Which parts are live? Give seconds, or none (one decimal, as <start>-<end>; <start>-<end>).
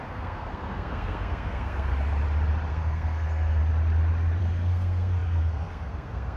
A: 1.9-2.7; 3.6-4.4